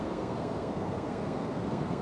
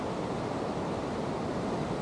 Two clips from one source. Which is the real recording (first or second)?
second